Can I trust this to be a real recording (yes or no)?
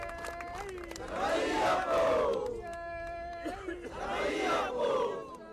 yes